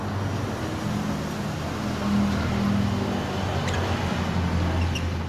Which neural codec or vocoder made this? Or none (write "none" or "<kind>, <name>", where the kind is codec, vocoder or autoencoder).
none